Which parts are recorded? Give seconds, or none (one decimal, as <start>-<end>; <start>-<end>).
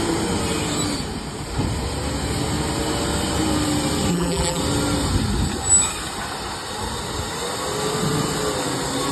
0.0-4.1; 4.6-9.1